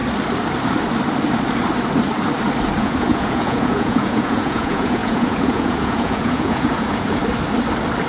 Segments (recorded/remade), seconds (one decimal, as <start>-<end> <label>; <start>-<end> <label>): 0.0-2.8 recorded; 2.8-7.2 remade; 7.2-8.1 recorded